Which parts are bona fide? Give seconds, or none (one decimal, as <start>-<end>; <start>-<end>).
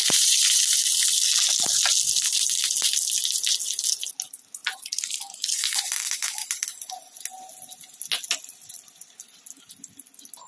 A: 0.6-4.6; 6.6-10.5